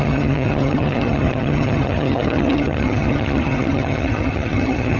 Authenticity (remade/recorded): remade